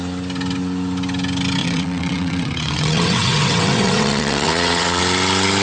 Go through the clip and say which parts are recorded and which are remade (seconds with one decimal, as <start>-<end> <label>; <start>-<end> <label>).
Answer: 0.0-1.6 recorded; 1.6-5.0 remade; 5.0-5.6 recorded